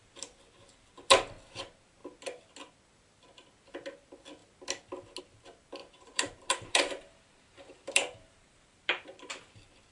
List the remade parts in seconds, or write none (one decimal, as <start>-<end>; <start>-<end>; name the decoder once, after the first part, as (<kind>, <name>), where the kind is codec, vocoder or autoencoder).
5.8-9.3 (vocoder, BigVGAN v2)